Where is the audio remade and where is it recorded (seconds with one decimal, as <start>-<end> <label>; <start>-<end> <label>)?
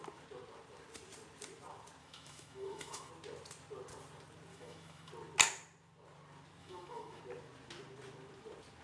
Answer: 0.0-2.0 recorded; 2.0-3.1 remade; 3.1-4.5 recorded; 4.5-5.1 remade; 5.1-6.6 recorded; 6.6-7.2 remade; 7.2-8.8 recorded